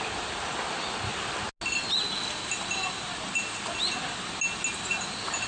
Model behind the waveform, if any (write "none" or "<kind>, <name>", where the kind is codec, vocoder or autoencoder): none